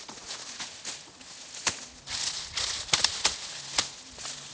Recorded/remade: recorded